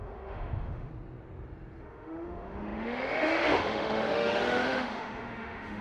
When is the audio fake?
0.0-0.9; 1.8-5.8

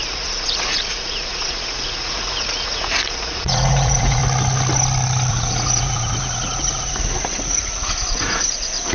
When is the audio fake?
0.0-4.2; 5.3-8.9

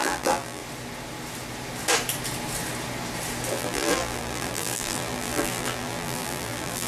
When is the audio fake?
0.0-0.6; 3.5-6.9

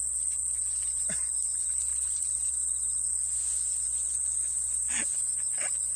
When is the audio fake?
none